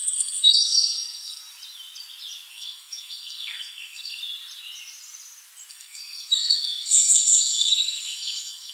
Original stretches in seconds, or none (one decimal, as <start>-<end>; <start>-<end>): 1.4-2.5; 4.2-5.7